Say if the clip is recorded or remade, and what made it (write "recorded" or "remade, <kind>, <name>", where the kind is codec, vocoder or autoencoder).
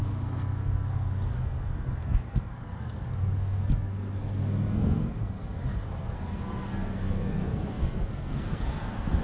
remade, codec, SNAC